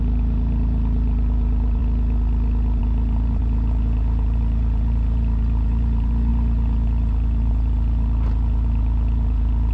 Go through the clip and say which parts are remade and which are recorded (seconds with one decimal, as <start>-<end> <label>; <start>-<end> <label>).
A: 0.0-1.8 remade; 1.8-2.8 recorded; 2.8-9.7 remade